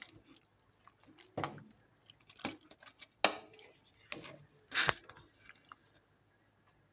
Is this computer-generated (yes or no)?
no